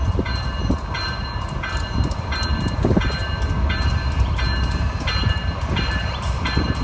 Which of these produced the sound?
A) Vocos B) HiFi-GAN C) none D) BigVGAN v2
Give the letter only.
C